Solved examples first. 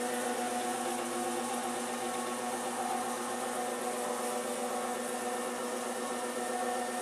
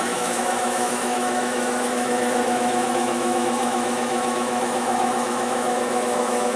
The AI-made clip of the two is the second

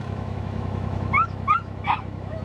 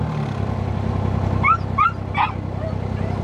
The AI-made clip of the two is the first